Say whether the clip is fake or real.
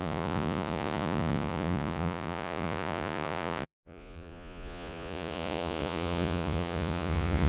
fake